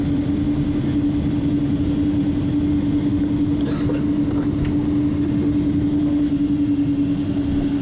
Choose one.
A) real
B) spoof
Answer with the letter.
A